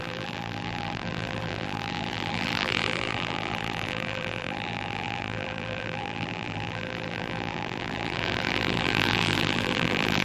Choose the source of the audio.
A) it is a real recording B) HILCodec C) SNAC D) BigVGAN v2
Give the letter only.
D